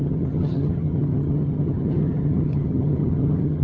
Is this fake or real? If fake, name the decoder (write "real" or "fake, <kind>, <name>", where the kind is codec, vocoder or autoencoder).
fake, vocoder, HiFi-GAN